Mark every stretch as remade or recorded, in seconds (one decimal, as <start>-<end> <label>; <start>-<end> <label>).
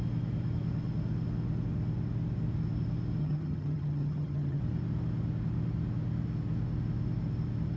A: 0.0-3.2 recorded; 3.2-4.6 remade; 4.6-7.8 recorded